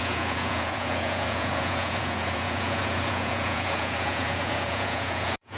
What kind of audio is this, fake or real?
fake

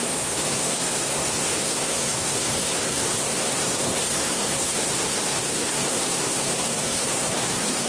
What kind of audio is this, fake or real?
fake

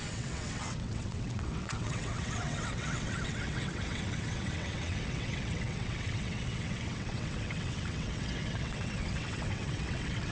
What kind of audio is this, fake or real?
fake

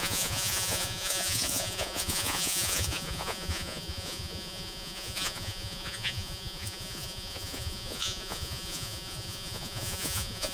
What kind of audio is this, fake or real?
fake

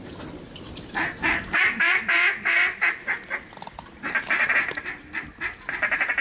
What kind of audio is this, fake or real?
real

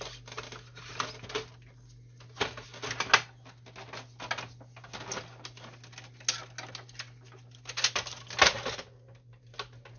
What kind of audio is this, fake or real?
real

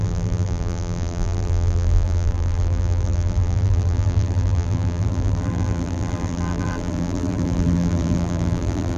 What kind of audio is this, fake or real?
fake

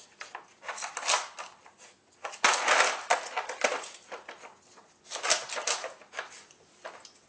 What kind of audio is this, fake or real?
real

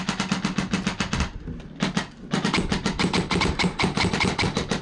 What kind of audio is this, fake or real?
real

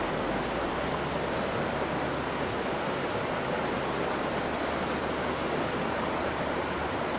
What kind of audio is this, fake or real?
real